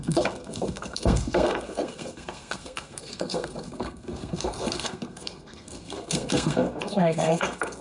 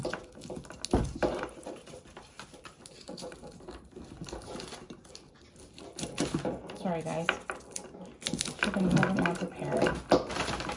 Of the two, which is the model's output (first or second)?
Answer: first